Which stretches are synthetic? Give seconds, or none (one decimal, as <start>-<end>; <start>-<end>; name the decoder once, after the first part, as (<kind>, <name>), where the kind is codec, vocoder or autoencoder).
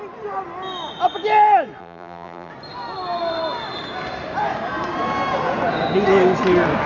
1.8-2.5 (vocoder, BigVGAN v2)